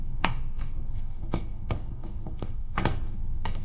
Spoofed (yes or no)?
yes